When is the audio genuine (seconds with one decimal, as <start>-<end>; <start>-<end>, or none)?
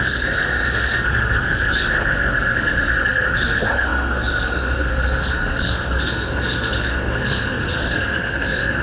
none